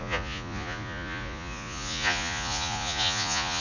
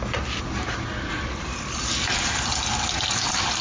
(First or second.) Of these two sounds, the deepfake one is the first